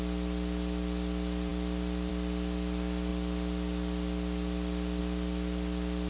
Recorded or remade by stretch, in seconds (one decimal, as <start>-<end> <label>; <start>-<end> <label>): 0.0-6.1 recorded